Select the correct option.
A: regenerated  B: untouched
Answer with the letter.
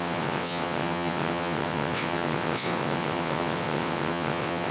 A